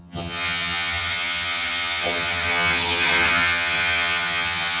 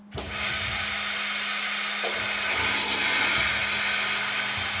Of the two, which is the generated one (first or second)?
first